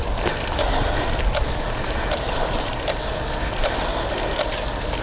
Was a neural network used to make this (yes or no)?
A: no